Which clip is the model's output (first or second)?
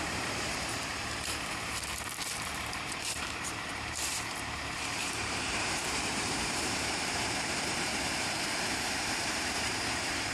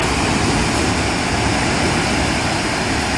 first